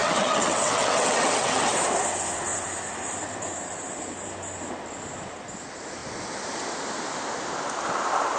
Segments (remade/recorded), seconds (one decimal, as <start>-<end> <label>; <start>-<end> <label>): 0.0-1.7 remade; 1.7-8.4 recorded